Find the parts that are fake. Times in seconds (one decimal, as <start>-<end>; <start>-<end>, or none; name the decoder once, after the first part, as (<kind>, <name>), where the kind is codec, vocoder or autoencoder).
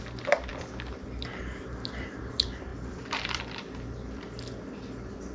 2.7-3.4 (vocoder, BigVGAN v2)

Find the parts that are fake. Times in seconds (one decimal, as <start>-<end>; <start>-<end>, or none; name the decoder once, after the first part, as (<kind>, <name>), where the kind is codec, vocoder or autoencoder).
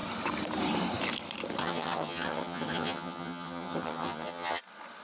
1.6-4.6 (vocoder, HiFi-GAN)